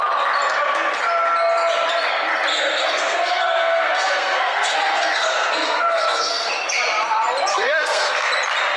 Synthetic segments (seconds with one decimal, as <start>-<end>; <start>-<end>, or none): 2.5-6.5; 7.5-8.3